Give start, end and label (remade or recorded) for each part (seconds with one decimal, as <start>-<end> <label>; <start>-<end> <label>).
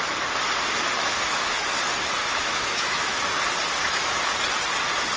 0.0-1.0 recorded; 1.0-1.7 remade; 1.7-2.2 recorded; 2.2-3.3 remade; 3.3-3.8 recorded; 3.8-4.3 remade; 4.3-5.2 recorded